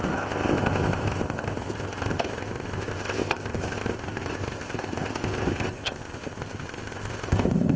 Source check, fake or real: fake